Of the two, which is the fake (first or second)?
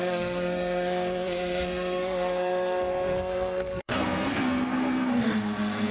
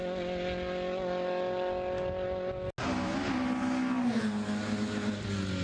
first